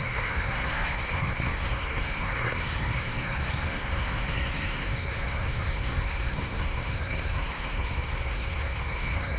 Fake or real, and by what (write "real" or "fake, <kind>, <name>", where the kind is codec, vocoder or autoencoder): fake, codec, SNAC